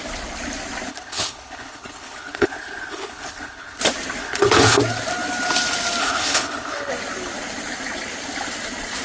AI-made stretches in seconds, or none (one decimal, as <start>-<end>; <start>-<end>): 0.9-3.8; 4.2-4.8; 6.0-6.9